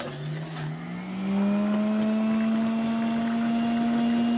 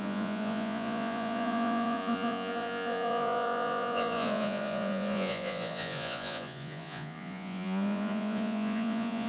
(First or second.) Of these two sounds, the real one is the first